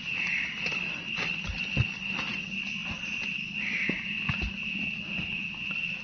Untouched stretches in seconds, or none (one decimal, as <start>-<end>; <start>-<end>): 0.0-6.0